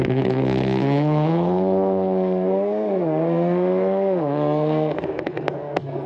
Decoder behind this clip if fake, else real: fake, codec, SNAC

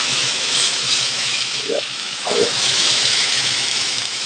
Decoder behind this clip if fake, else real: fake, autoencoder, DAC-VAE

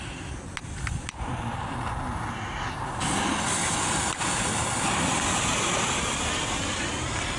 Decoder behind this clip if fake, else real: real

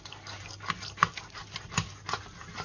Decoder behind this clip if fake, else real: real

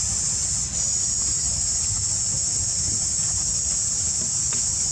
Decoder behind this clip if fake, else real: real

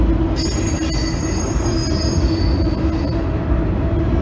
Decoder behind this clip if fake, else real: real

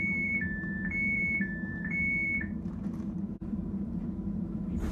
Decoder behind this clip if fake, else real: fake, vocoder, BigVGAN v2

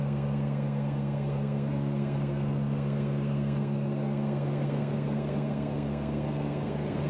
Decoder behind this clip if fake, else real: fake, codec, SNAC